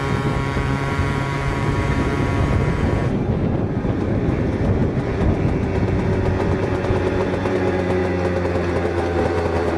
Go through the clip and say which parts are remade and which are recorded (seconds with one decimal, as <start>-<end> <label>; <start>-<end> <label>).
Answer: 0.0-4.8 remade; 4.8-6.5 recorded; 6.5-8.0 remade; 8.0-9.2 recorded; 9.2-9.8 remade